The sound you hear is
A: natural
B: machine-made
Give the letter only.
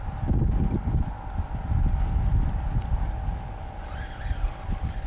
A